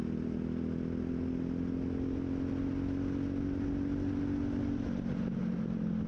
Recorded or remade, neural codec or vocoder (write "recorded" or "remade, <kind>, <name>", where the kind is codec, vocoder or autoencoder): recorded